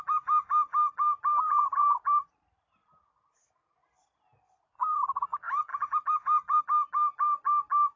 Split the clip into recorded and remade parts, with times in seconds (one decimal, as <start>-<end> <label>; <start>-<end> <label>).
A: 0.0-1.8 recorded; 1.8-5.2 remade; 5.2-5.7 recorded; 5.7-6.6 remade; 6.6-8.0 recorded